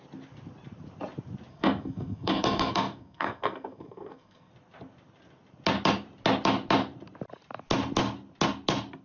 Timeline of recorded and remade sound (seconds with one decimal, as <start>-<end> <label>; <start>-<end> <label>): 0.0-1.5 recorded; 1.5-4.5 remade; 4.5-9.0 recorded